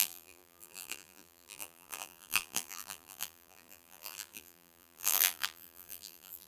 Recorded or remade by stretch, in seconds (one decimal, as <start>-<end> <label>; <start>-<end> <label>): 0.0-6.5 remade